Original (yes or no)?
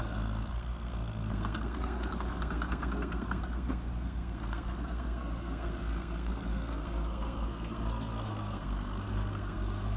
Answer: no